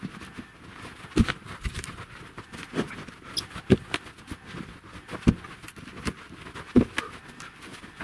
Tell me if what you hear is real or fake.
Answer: real